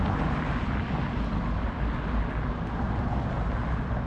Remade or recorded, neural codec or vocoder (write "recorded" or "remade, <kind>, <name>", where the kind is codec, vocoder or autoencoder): recorded